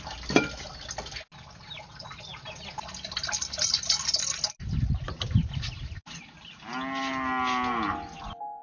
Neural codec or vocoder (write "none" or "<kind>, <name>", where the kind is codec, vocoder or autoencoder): none